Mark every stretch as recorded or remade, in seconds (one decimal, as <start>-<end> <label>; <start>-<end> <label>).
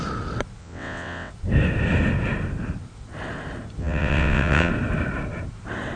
0.0-0.6 recorded; 0.6-1.3 remade; 1.3-3.8 recorded; 3.8-4.7 remade; 4.7-6.0 recorded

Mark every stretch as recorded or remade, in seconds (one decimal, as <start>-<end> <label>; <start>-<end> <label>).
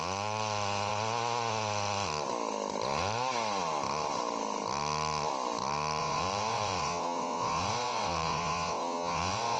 0.0-6.0 recorded; 6.0-9.6 remade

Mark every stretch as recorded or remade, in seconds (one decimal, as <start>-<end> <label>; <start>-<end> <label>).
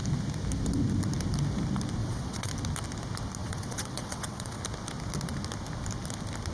0.0-2.0 recorded; 2.0-2.5 remade; 2.5-3.4 recorded; 3.4-4.6 remade; 4.6-6.5 recorded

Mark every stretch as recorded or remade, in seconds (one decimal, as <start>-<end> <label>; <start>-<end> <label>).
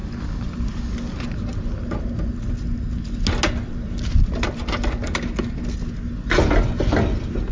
0.0-7.5 recorded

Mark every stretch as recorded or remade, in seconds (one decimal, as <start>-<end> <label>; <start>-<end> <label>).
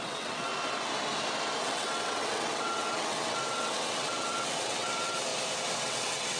0.0-0.5 remade; 0.5-1.6 recorded; 1.6-5.3 remade; 5.3-5.8 recorded; 5.8-6.4 remade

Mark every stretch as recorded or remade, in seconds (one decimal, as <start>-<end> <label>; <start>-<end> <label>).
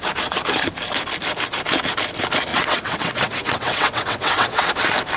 0.0-2.5 recorded; 2.5-4.7 remade; 4.7-5.2 recorded